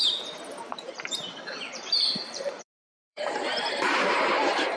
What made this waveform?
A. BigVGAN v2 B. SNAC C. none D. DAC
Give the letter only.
A